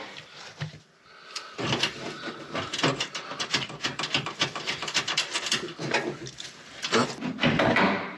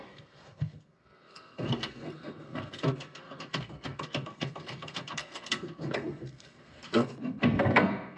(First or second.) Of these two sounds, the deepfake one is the second